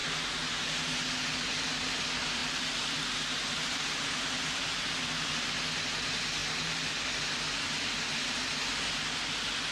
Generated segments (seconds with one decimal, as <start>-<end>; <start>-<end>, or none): none